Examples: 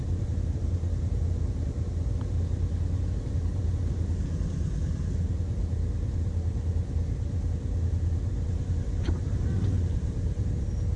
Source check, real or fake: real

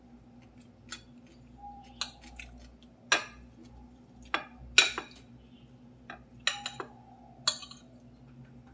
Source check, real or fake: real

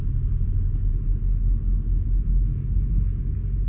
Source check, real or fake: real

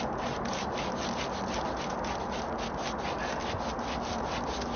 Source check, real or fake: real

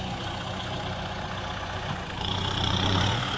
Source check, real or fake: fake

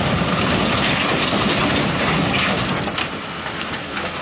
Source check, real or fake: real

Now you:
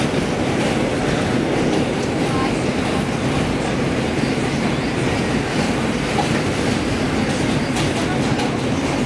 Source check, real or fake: real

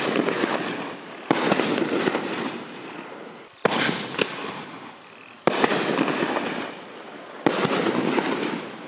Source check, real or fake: real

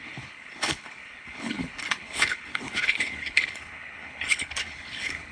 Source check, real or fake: fake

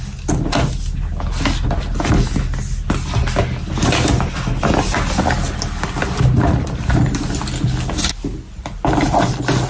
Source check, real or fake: real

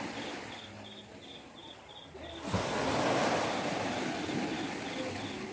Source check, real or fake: real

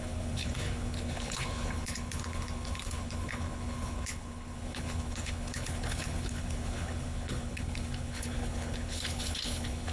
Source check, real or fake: fake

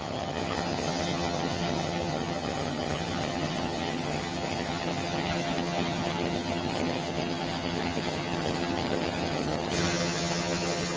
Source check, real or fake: fake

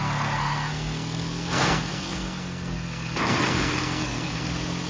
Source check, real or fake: fake